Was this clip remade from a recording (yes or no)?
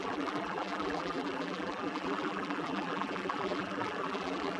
yes